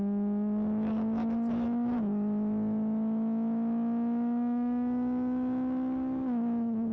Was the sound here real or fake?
fake